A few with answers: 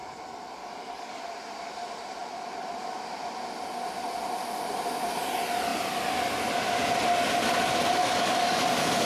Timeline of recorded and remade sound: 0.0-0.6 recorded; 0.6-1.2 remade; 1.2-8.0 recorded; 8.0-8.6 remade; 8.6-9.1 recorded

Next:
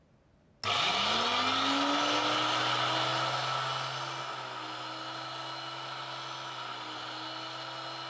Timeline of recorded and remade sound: 0.0-8.1 recorded

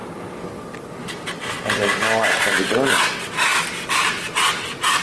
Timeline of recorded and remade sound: 0.0-5.0 remade

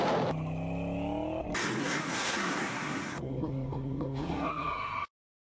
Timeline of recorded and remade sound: 0.0-1.8 recorded; 1.8-5.1 remade; 5.1-5.5 recorded

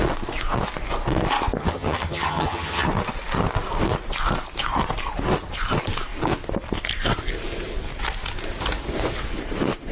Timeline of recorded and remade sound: 0.0-1.6 recorded; 1.6-2.9 remade; 2.9-9.9 recorded

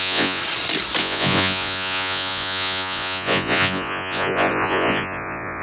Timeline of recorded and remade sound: 0.0-0.4 remade; 0.4-1.0 recorded; 1.0-5.6 remade